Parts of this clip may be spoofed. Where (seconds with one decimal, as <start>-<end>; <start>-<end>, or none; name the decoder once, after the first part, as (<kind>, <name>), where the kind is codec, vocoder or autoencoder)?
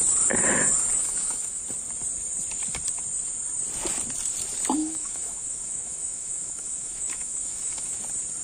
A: 1.0-1.6 (autoencoder, DAC-VAE); 4.8-7.9